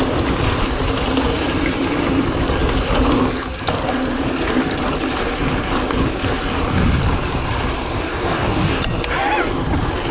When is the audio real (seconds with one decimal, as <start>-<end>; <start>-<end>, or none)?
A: 0.0-8.1; 8.8-10.1

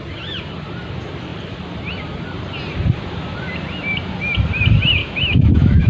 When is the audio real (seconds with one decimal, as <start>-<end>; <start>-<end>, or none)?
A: 0.0-5.0

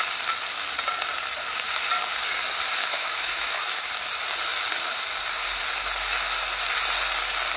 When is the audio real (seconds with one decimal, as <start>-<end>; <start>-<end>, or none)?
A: 0.0-2.8; 3.9-7.6

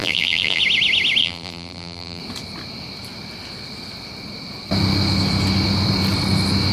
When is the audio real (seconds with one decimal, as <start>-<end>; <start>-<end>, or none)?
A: 0.6-1.2; 2.2-6.7

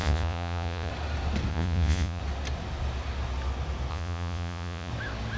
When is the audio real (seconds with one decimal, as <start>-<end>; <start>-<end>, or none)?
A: 0.9-1.5; 2.2-3.9; 4.9-5.4

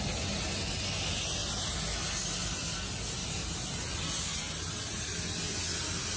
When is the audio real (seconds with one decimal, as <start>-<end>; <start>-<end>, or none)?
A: 0.0-3.2; 3.8-6.2

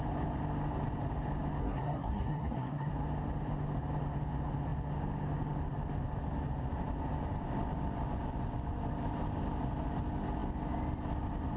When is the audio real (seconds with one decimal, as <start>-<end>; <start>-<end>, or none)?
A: 0.0-1.6; 2.9-11.6